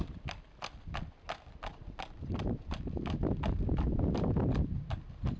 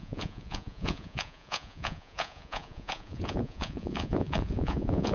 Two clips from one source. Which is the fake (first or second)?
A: second